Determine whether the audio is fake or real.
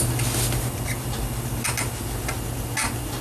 real